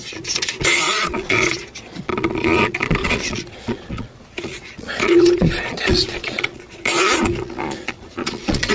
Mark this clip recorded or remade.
remade